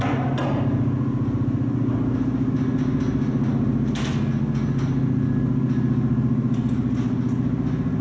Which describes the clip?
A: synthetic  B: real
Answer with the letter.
B